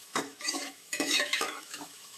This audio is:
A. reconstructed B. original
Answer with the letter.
A